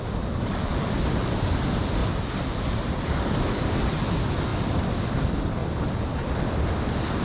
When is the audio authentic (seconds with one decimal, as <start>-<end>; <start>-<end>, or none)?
0.0-4.5; 5.0-7.2